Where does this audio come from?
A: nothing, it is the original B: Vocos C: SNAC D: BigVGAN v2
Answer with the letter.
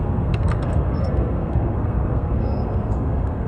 C